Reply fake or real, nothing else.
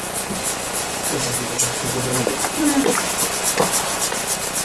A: fake